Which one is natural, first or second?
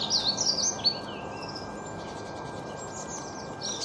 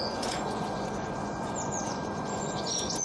first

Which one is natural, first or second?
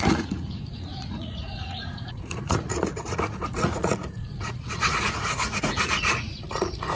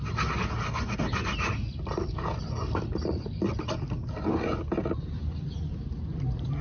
second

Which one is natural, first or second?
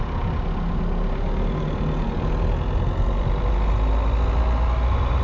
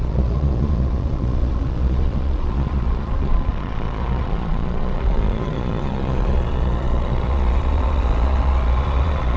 first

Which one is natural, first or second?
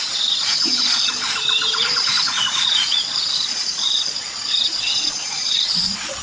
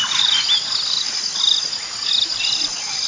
second